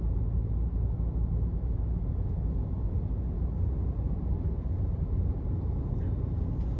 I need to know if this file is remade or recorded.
recorded